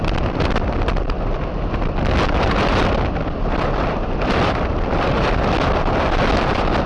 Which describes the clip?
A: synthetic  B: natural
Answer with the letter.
A